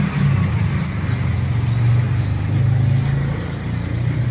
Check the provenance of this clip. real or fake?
real